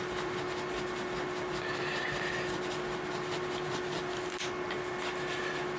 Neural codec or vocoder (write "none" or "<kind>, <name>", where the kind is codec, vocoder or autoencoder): none